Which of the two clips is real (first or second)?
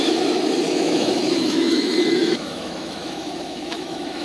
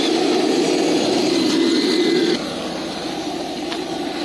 second